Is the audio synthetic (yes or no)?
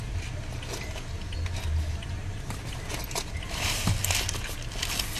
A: no